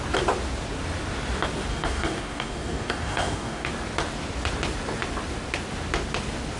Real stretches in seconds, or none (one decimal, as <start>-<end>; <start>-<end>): 0.0-1.7; 3.7-6.6

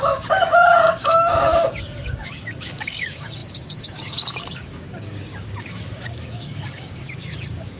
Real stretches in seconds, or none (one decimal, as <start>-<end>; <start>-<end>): none

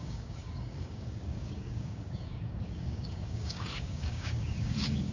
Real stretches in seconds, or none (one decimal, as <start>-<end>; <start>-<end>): none

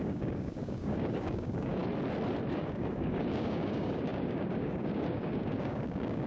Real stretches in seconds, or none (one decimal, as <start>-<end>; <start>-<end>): 1.8-2.5

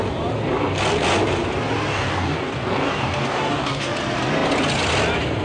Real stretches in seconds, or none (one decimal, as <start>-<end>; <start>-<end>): 0.0-1.9; 3.9-5.4